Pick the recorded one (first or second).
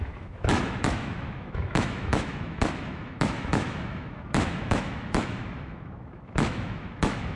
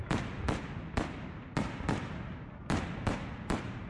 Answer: second